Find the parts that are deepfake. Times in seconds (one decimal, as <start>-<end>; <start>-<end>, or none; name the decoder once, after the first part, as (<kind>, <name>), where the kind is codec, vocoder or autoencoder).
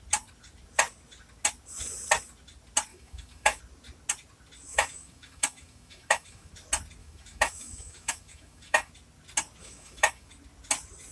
2.9-3.6 (autoencoder, DAC-VAE); 4.7-6.5; 7.0-8.9; 9.6-10.3